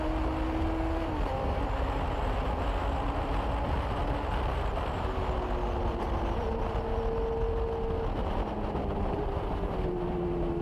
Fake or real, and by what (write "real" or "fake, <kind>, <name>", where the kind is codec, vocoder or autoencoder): real